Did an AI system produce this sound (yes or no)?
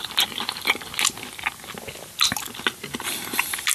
no